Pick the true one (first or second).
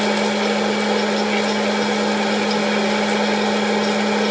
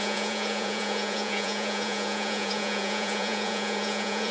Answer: first